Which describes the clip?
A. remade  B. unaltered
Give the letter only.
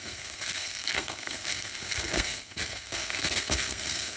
A